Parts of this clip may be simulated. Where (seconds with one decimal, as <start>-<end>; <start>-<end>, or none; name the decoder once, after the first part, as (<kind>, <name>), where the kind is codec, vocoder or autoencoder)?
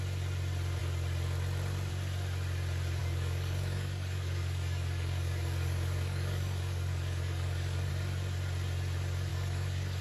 3.0-7.9 (codec, DAC); 9.3-10.0